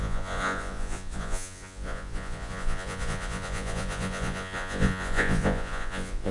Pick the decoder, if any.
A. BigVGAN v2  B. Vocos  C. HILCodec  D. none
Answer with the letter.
B